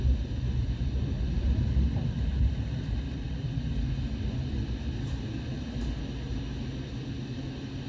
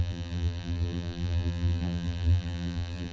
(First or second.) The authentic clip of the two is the first